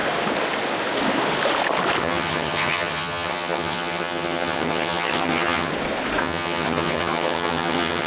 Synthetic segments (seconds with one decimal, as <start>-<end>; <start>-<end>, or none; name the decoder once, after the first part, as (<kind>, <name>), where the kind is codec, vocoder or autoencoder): 2.0-5.7 (vocoder, HiFi-GAN); 6.2-8.1